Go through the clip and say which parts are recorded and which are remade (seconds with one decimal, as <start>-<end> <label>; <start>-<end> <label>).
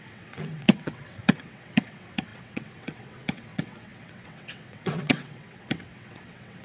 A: 0.0-6.6 remade